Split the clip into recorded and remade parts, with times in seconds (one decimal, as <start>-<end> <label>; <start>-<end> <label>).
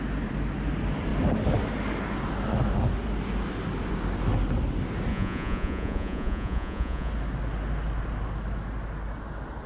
0.0-5.1 recorded; 5.1-7.1 remade; 7.1-9.7 recorded